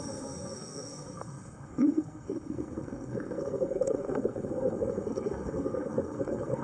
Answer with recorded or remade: remade